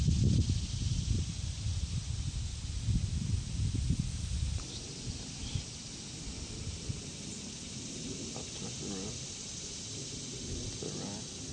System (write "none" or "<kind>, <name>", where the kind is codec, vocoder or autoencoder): none